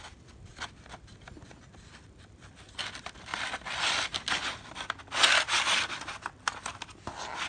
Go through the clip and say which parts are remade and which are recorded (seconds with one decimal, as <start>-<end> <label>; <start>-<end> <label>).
0.0-7.5 recorded